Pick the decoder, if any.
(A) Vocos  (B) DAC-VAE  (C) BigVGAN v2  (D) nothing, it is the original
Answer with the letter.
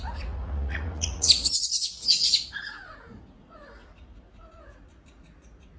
A